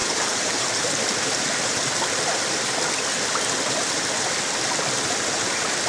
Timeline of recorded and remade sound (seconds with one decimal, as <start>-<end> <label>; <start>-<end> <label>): 0.0-0.8 remade; 0.8-5.9 recorded